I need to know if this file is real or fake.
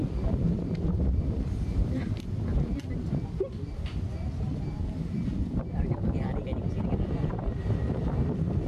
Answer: real